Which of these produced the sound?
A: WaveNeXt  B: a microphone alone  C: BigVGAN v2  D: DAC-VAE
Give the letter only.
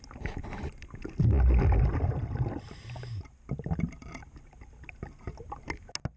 B